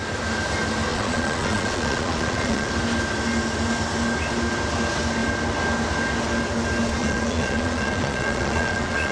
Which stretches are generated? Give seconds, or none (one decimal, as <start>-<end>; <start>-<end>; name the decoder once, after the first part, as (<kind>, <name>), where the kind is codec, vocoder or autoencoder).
0.9-2.7 (vocoder, Vocos); 7.0-9.1